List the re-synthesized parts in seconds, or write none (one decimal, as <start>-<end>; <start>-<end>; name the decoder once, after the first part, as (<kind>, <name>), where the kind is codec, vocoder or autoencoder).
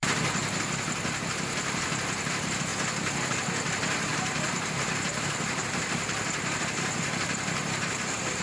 0.0-0.4 (vocoder, BigVGAN v2); 1.6-2.7; 3.3-8.4